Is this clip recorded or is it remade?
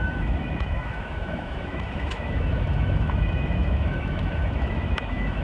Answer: remade